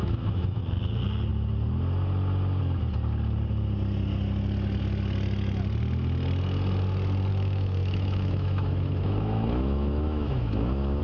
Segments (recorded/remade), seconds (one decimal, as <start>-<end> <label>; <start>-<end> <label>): 0.0-0.6 remade; 0.6-7.3 recorded; 7.3-11.0 remade

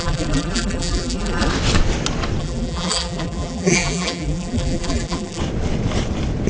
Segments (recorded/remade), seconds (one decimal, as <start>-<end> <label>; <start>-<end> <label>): 0.0-1.5 remade; 1.5-2.4 recorded; 2.4-5.4 remade; 5.4-6.5 recorded

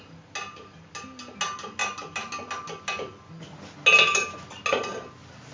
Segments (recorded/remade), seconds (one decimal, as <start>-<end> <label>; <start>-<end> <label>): 0.0-5.5 recorded

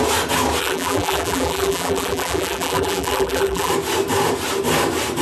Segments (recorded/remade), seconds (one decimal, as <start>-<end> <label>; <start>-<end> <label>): 0.0-0.6 recorded; 0.6-3.7 remade; 3.7-5.2 recorded

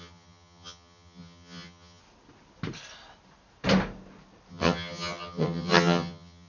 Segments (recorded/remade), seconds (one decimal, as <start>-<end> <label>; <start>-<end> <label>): 0.0-2.0 remade; 2.0-4.5 recorded; 4.5-6.5 remade